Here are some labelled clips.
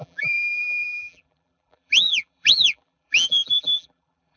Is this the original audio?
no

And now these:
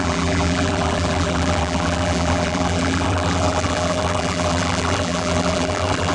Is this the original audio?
no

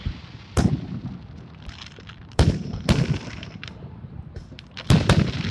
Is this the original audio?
no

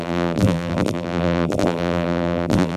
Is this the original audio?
no